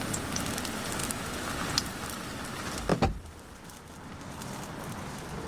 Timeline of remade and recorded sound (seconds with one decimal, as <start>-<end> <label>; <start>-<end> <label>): 0.0-1.0 recorded; 1.0-1.5 remade; 1.5-5.5 recorded